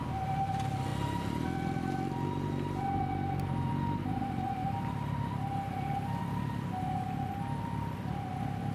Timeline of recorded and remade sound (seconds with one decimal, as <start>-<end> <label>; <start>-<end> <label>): 0.0-8.7 recorded